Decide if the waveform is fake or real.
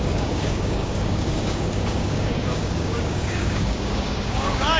fake